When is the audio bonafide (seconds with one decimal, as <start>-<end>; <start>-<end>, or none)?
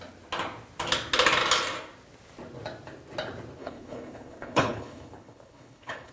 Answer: 0.0-3.6